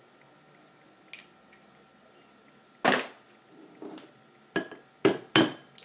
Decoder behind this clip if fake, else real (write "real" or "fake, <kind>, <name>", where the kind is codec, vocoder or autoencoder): real